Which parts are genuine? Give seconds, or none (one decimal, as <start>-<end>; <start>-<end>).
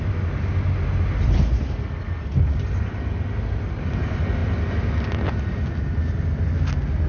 0.0-7.1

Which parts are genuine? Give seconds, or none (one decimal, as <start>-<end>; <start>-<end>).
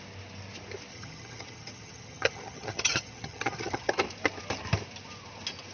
0.0-0.9; 3.9-5.7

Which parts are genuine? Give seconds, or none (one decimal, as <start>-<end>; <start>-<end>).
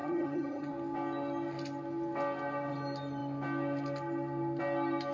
0.7-5.1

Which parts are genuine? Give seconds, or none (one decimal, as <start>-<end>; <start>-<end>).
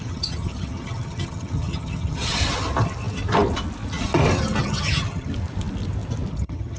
2.4-4.6; 5.3-6.3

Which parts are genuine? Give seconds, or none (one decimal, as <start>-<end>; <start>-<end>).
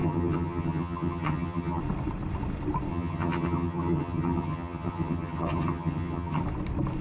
1.8-2.9; 6.4-7.0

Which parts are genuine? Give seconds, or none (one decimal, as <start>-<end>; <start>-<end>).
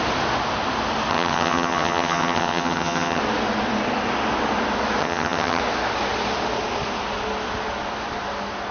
0.0-1.1; 3.2-5.0; 5.6-8.7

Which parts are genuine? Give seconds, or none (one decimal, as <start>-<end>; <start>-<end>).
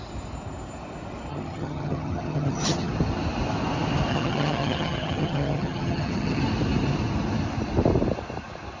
0.0-1.3; 2.9-4.1; 6.4-8.8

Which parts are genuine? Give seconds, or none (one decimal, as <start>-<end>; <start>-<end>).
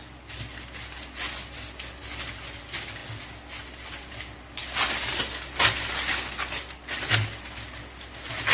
0.0-8.5